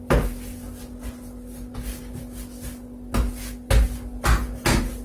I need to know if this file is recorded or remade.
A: recorded